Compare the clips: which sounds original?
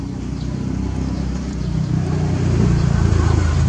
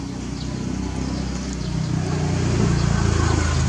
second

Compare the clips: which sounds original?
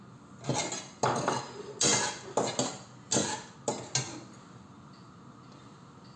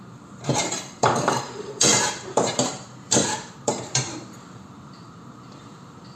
first